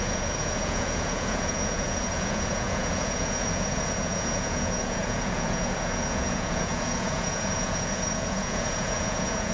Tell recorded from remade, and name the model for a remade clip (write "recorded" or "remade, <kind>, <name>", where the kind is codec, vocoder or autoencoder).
remade, vocoder, Vocos